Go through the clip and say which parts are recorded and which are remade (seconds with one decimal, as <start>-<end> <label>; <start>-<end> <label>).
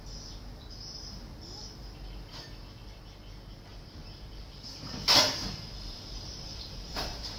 0.0-3.7 recorded; 3.7-7.4 remade